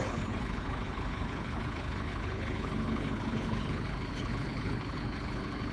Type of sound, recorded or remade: remade